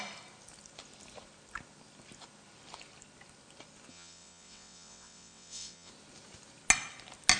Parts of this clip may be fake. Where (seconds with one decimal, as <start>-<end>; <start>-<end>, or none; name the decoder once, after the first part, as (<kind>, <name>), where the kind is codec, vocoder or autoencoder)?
3.9-5.9 (vocoder, WaveNeXt)